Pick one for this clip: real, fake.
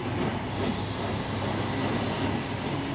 real